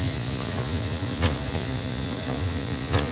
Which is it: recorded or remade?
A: remade